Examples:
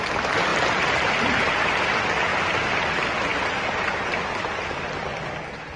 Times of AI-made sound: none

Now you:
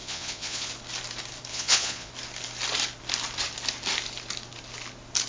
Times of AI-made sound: 0.0-0.7 (vocoder, Vocos); 1.5-2.1

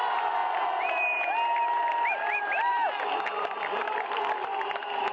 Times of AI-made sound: none

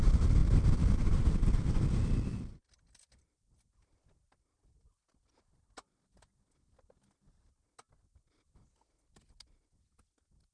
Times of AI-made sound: 0.4-1.9 (vocoder, BigVGAN v2)

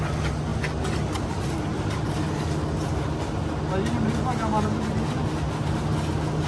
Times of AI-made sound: none